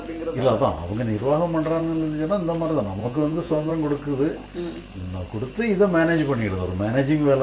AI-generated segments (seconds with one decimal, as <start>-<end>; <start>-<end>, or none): 3.0-3.7